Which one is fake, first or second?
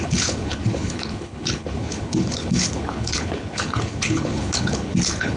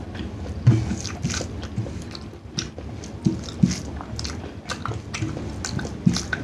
first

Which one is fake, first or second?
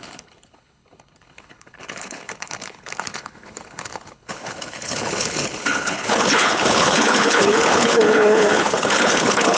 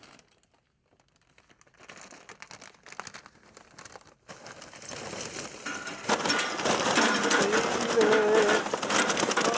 first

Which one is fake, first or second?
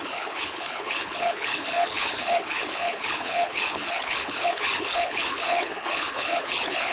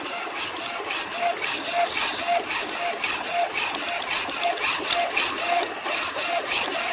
first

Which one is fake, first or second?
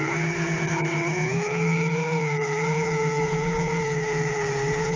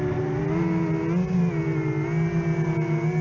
first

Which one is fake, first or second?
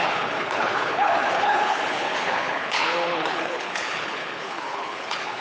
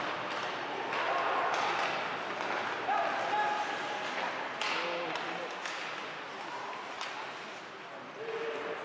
first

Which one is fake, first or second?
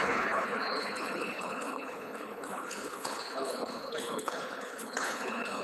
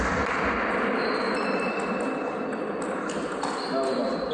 first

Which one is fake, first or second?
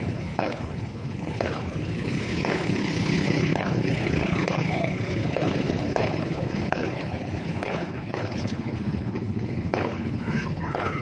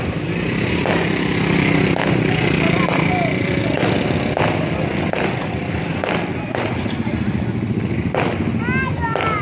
first